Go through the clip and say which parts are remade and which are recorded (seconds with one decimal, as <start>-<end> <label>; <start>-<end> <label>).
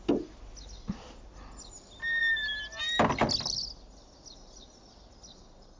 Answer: 0.0-5.8 recorded